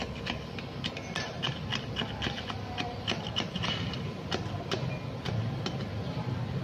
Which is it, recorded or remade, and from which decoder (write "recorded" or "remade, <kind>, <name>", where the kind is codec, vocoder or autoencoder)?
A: recorded